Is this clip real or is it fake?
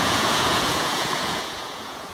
fake